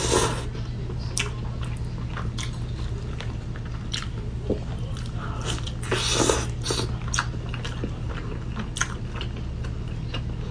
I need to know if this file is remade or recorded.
recorded